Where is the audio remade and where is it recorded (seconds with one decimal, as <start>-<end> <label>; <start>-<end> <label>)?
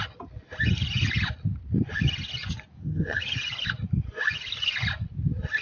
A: 0.0-2.8 recorded; 2.8-3.4 remade; 3.4-5.6 recorded